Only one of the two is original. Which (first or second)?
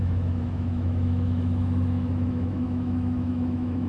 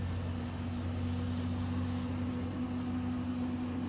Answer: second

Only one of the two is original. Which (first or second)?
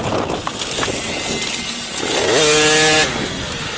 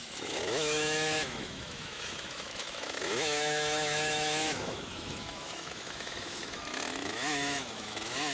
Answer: first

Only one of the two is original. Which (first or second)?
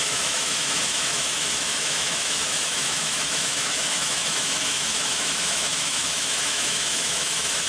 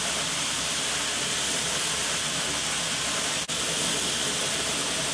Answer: second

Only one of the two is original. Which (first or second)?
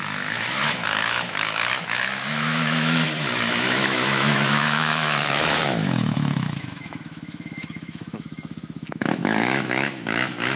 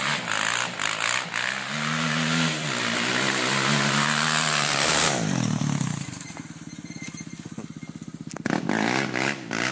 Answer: second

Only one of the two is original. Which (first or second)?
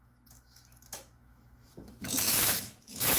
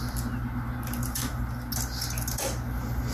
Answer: second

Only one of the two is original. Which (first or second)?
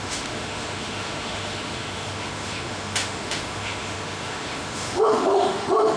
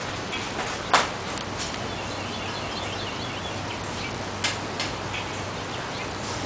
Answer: second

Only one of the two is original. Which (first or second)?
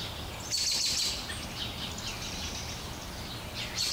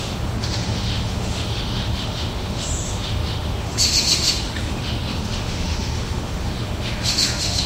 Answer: first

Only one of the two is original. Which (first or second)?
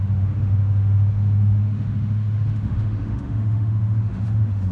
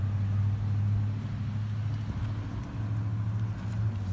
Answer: second